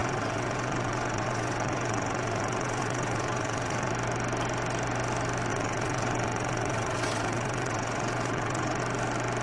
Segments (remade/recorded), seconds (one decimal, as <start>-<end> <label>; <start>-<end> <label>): 0.0-3.9 remade; 3.9-5.5 recorded; 5.5-8.8 remade; 8.8-9.4 recorded